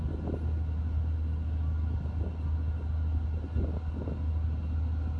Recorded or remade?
recorded